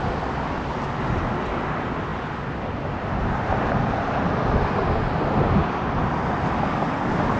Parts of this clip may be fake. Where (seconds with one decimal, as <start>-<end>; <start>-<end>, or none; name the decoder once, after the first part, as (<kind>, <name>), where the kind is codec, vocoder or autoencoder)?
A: none